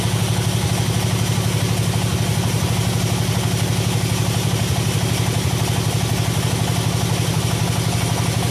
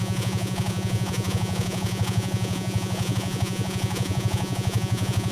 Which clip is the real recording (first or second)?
first